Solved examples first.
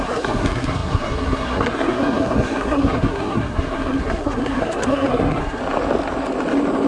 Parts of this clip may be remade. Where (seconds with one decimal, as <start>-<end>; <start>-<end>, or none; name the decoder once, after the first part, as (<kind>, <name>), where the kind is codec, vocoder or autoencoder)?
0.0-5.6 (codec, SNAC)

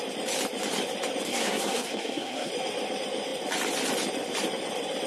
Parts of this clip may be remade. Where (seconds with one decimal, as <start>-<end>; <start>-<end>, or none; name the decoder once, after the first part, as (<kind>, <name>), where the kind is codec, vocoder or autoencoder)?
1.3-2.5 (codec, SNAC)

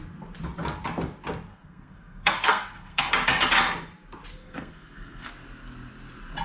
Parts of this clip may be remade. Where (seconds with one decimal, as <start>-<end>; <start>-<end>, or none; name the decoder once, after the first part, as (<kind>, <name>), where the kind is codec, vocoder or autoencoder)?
1.5-3.1 (codec, SNAC); 4.4-5.3

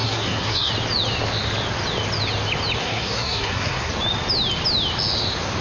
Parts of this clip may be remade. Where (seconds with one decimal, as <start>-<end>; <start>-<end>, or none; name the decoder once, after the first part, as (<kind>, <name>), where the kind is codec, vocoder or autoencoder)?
0.0-0.7 (codec, SNAC); 2.8-3.9

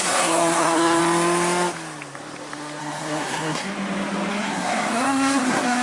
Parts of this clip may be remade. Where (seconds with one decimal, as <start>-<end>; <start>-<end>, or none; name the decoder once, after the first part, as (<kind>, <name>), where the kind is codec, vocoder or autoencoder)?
0.0-1.0 (codec, SNAC); 2.8-3.7; 4.3-5.8

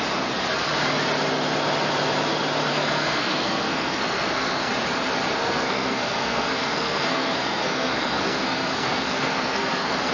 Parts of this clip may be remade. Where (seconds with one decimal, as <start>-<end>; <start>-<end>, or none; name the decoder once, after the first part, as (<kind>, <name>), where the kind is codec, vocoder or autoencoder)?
2.7-4.7 (codec, SNAC); 5.4-10.1